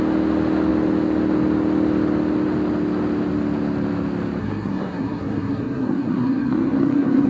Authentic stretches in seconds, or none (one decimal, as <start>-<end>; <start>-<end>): 0.0-4.4